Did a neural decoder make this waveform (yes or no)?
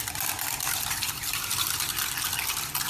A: no